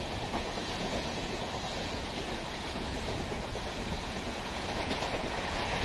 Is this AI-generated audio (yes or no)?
yes